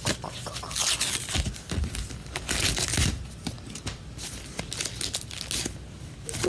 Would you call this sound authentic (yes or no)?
yes